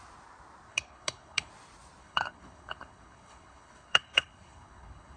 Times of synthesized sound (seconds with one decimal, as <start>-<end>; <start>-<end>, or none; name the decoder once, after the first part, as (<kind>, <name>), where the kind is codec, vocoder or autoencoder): 0.7-1.5 (codec, HILCodec); 2.0-5.2